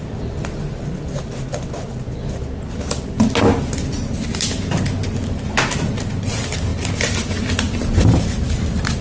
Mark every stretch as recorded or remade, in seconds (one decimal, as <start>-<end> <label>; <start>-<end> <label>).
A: 0.0-9.0 recorded